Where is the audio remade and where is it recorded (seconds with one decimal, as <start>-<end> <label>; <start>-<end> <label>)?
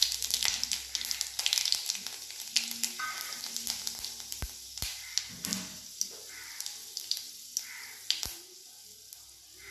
0.0-5.5 recorded; 5.5-6.5 remade; 6.5-9.7 recorded